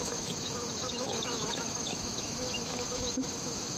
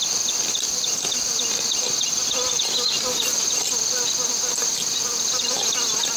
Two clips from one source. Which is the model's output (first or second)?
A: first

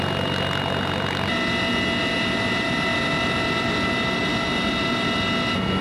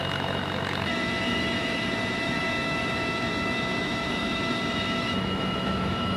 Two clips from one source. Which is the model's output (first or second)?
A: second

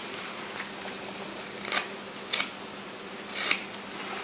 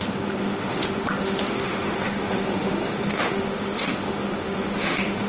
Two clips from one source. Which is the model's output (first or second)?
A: second